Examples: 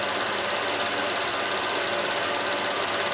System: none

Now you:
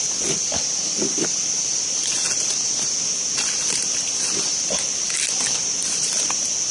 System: none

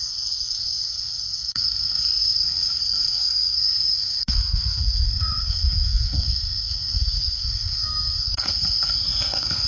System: codec, SNAC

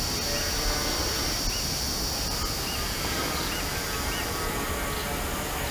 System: none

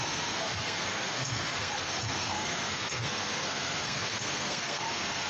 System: codec, SNAC